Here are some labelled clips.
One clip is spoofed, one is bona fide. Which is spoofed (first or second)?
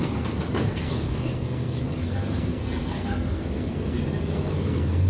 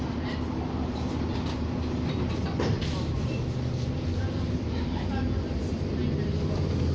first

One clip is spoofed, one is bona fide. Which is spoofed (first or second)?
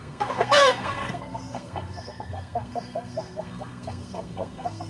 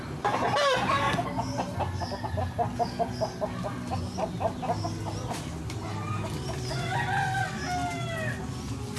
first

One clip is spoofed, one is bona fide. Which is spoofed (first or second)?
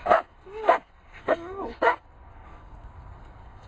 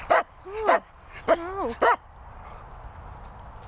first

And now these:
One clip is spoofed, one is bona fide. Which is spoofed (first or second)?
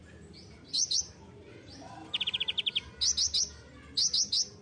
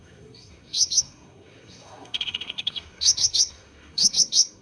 second